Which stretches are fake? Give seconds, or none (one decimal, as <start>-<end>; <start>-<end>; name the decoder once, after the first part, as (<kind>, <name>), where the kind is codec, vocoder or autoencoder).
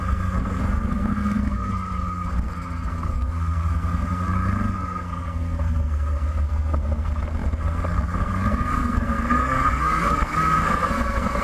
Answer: 0.0-11.4 (codec, SNAC)